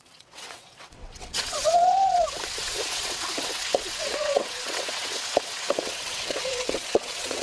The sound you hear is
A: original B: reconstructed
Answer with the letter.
B